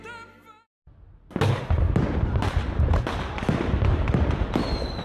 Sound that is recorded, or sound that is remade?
recorded